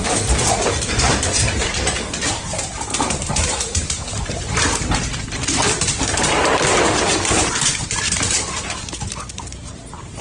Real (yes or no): no